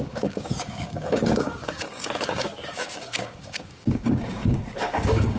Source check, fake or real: fake